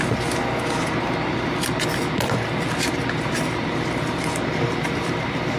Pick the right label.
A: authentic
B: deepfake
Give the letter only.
A